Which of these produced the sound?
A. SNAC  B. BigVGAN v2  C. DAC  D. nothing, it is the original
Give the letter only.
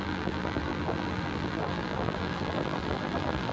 B